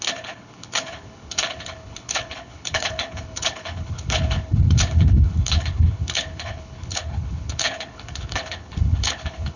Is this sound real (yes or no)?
no